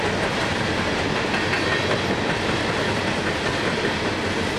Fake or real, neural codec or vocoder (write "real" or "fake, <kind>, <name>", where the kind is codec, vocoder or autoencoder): real